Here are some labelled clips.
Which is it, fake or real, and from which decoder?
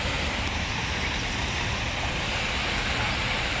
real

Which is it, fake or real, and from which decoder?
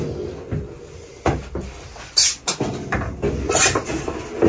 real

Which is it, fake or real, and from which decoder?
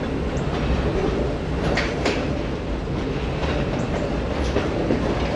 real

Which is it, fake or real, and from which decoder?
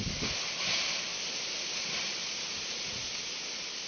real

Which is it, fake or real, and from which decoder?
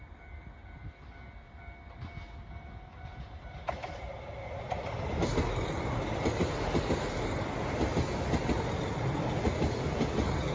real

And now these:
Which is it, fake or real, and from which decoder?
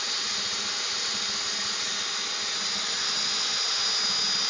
real